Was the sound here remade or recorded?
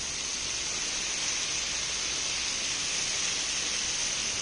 recorded